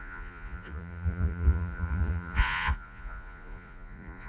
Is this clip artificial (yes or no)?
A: yes